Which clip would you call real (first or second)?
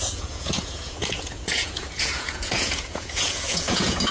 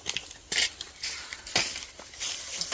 second